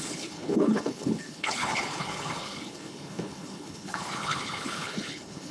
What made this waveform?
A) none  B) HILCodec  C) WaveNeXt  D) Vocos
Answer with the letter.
B